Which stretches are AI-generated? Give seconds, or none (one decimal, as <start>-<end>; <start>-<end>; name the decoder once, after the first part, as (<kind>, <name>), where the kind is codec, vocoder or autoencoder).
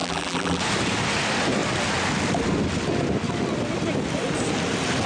0.0-0.6 (vocoder, BigVGAN v2)